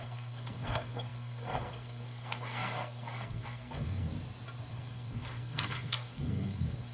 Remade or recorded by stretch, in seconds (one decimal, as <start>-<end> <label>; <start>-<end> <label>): 0.0-4.1 remade; 4.1-4.7 recorded; 4.7-6.9 remade